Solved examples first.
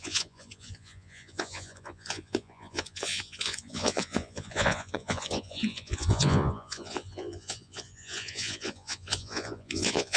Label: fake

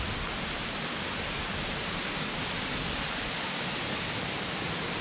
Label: real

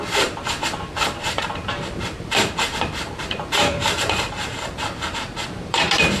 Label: fake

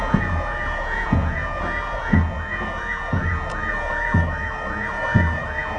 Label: fake